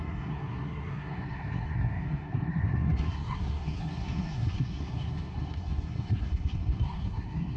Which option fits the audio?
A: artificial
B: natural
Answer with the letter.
A